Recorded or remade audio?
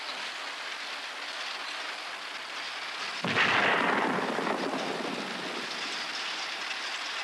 recorded